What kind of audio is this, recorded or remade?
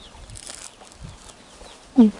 recorded